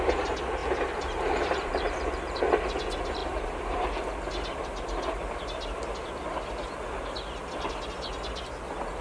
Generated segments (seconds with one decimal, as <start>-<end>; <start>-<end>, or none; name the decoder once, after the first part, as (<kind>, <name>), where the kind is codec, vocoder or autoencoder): 0.6-2.4 (vocoder, BigVGAN v2); 3.2-4.1